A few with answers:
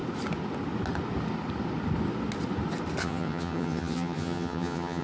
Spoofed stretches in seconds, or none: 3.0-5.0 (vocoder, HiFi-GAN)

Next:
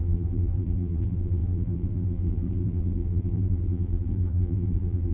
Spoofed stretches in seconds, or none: 0.0-5.1 (vocoder, BigVGAN v2)

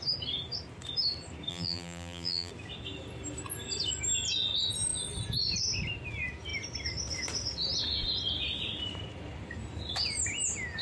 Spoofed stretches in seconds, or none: 1.5-2.5 (vocoder, BigVGAN v2)

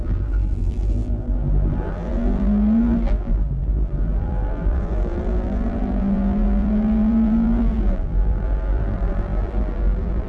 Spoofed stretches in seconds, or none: 0.0-10.3 (vocoder, BigVGAN v2)

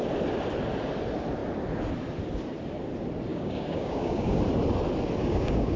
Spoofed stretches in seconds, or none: 3.3-4.4 (codec, DAC); 5.2-5.8

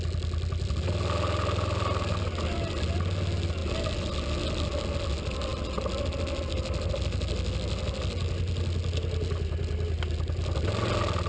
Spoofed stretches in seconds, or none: none

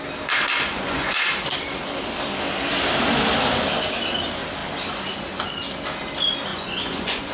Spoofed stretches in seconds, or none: 0.7-1.3 (vocoder, Vocos); 6.5-7.3